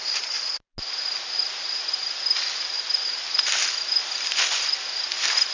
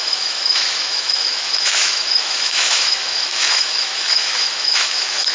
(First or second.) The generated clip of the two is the second